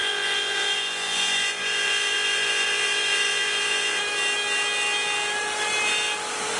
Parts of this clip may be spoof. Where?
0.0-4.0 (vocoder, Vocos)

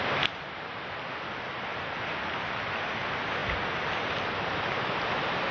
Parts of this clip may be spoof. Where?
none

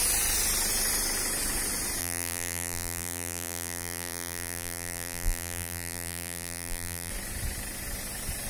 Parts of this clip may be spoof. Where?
2.0-7.1 (vocoder, BigVGAN v2)

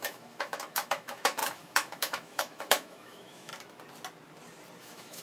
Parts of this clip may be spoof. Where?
0.0-3.5 (autoencoder, DAC-VAE); 4.8-5.2

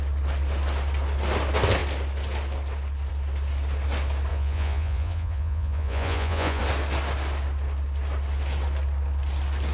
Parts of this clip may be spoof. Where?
4.3-6.6 (vocoder, Vocos)

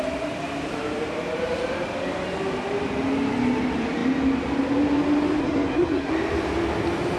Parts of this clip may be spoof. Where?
5.4-6.1 (codec, SNAC)

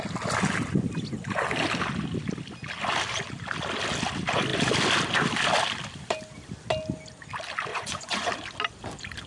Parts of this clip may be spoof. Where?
7.7-8.3 (vocoder, Vocos)